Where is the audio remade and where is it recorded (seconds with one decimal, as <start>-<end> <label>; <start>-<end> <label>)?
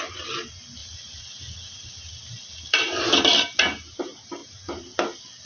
0.0-0.8 recorded; 0.8-3.3 remade; 3.3-5.5 recorded